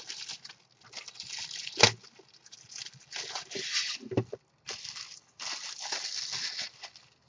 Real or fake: real